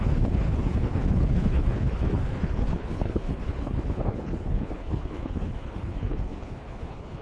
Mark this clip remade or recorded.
remade